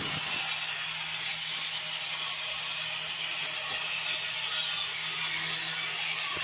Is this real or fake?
real